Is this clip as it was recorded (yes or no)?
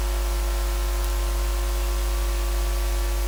yes